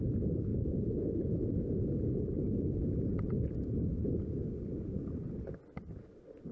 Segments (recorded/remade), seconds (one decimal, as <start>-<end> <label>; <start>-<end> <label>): 0.0-0.5 recorded; 0.5-4.2 remade; 4.2-6.5 recorded